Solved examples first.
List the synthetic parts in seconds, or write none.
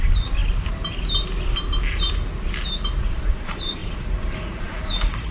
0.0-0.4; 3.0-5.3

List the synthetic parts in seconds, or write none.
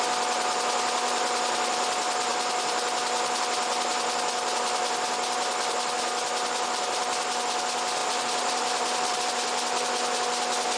8.0-9.2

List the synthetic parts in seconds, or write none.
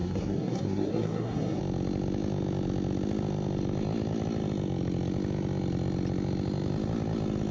0.0-1.6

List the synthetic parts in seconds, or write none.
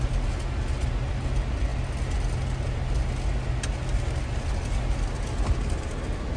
none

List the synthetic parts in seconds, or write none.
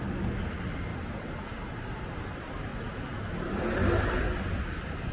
none